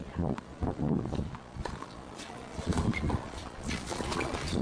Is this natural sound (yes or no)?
no